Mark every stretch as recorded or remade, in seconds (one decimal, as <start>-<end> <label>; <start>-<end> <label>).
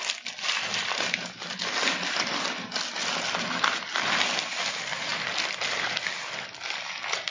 0.0-7.3 recorded